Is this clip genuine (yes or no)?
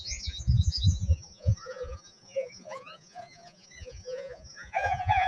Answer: no